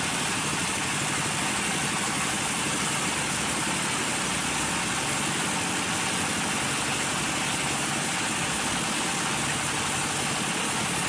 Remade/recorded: recorded